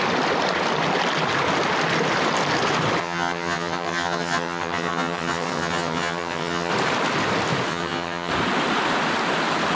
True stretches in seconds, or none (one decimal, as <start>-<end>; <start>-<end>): 0.0-3.0; 6.7-7.7; 8.3-9.7

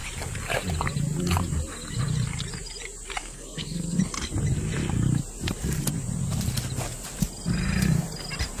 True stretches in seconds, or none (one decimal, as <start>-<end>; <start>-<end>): 0.0-3.2; 4.0-8.6

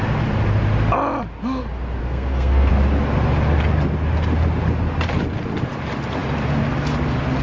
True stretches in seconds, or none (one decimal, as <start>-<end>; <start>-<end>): 0.0-2.0; 2.7-7.4

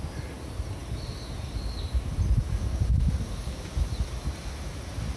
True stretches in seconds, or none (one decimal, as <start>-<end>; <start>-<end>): 0.0-2.4; 3.7-5.2